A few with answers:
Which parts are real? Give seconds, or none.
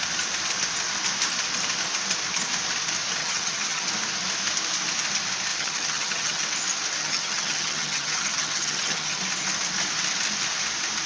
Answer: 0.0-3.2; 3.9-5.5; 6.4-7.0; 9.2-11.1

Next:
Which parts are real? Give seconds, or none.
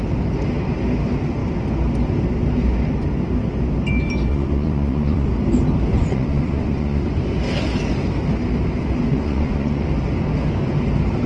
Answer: 0.0-4.3; 5.3-5.9; 7.1-9.1; 9.9-11.3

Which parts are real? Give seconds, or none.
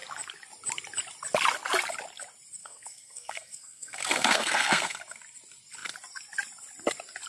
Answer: 0.0-2.6; 5.0-7.3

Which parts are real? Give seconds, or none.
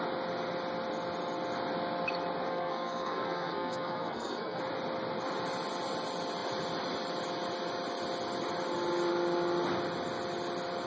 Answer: 0.0-2.5; 4.6-10.9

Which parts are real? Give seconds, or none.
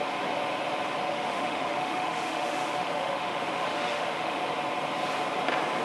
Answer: 0.0-1.0; 4.4-5.8